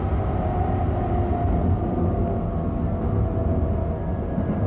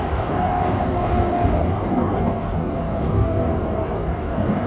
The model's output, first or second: second